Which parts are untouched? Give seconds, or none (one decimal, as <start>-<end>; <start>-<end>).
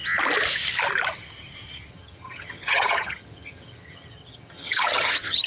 0.0-1.9